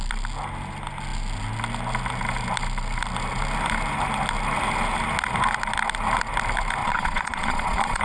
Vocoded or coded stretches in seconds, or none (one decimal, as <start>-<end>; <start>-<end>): 6.8-8.0